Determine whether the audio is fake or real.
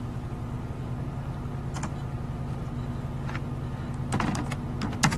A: real